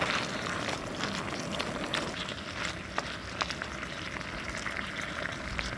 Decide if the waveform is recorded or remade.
recorded